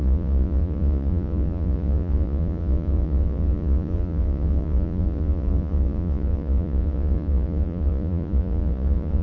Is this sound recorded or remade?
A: remade